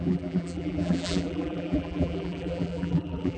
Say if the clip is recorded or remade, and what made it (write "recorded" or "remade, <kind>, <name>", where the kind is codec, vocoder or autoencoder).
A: remade, vocoder, BigVGAN v2